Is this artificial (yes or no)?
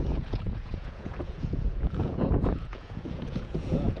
yes